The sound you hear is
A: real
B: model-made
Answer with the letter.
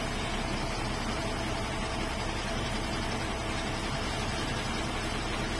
A